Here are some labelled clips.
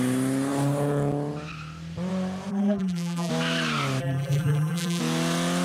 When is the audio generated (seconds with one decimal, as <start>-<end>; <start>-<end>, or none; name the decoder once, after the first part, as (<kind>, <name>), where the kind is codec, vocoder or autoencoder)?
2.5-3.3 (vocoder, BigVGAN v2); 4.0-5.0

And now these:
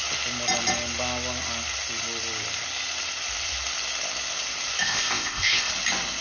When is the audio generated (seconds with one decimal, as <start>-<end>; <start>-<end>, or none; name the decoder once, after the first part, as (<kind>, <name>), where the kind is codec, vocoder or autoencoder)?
4.8-5.7 (codec, ZipCodec)

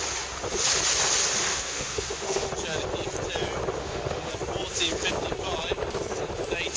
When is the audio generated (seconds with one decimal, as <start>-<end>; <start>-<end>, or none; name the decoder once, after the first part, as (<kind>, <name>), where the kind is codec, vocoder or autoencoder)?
1.5-2.5 (autoencoder, DAC-VAE); 3.8-4.3

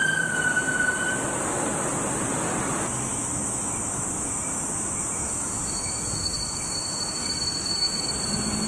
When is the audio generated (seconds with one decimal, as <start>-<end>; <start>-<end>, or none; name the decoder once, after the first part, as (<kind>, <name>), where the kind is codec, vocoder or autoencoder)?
3.1-8.1 (autoencoder, DAC-VAE)

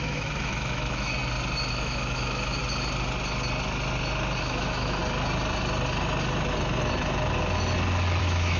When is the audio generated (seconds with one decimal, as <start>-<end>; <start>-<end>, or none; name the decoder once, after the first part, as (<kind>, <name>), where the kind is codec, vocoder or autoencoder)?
0.0-1.2 (autoencoder, DAC-VAE); 1.7-2.6; 4.4-5.0; 8.2-8.6